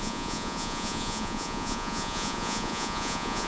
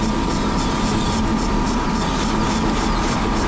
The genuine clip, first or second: second